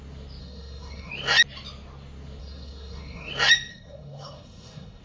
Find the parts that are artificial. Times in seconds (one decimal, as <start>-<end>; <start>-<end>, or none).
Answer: 0.4-1.1; 2.4-3.3; 3.7-5.0